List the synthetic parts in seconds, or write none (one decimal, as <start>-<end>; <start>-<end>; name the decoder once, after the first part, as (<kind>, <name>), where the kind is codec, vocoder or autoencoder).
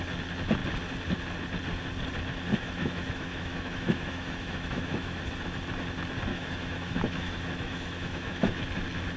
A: 2.5-5.2 (autoencoder, DAC-VAE); 6.3-8.6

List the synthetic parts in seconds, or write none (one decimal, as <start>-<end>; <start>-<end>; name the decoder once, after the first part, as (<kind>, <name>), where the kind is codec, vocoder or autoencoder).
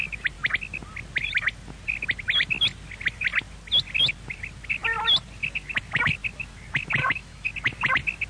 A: 7.0-7.5 (autoencoder, DAC-VAE)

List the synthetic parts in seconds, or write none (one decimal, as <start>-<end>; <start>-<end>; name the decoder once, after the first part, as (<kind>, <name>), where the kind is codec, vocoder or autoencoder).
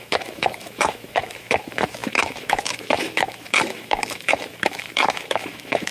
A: 0.0-5.9 (autoencoder, DAC-VAE)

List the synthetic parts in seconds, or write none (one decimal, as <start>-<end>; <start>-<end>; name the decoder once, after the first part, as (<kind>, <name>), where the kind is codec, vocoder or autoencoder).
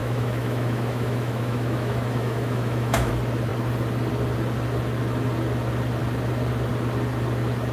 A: 0.0-3.1 (autoencoder, DAC-VAE)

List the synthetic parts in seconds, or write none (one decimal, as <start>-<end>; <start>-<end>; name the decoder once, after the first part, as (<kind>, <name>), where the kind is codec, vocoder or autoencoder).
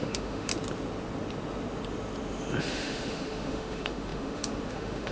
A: 0.0-0.5 (autoencoder, DAC-VAE); 2.6-5.1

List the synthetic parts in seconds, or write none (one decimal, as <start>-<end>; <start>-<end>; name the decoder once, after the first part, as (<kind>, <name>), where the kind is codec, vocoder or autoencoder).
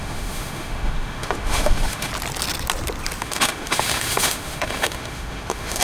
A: 0.0-2.1 (autoencoder, DAC-VAE); 3.2-5.8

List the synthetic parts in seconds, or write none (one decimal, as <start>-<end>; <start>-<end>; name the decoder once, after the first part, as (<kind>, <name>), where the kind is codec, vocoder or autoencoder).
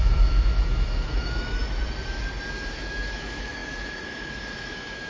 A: 0.0-1.6 (autoencoder, DAC-VAE); 2.5-5.1